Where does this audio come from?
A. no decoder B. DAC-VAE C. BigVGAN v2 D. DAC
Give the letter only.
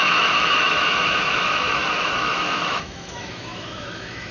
B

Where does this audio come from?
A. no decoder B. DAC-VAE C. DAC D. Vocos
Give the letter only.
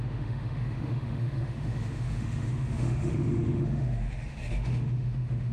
B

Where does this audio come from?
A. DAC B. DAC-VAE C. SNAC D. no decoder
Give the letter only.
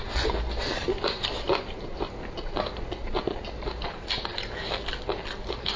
D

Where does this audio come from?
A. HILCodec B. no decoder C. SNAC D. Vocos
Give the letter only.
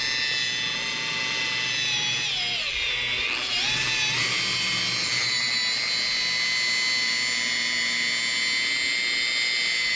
B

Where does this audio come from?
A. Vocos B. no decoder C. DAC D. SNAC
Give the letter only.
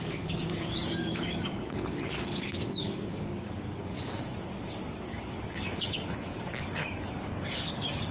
C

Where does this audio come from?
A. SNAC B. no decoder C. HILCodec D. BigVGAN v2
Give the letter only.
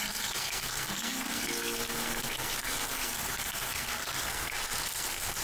A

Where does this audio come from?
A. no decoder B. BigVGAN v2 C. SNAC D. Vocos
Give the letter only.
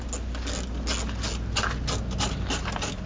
A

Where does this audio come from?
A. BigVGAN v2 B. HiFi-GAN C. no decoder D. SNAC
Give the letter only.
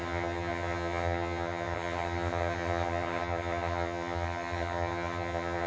B